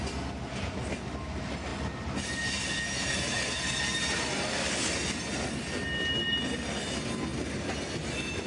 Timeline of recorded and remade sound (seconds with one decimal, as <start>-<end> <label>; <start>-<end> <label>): 0.0-8.5 recorded